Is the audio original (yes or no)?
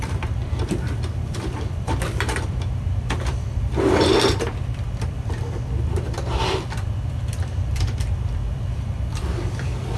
no